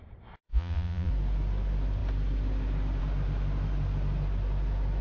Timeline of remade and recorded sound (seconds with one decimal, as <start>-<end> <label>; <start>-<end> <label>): 0.0-0.5 recorded; 0.5-1.1 remade; 1.1-5.0 recorded